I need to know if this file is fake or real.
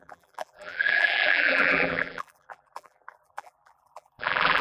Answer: fake